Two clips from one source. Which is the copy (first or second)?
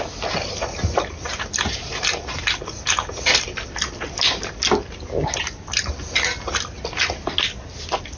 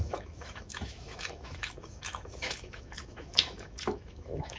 second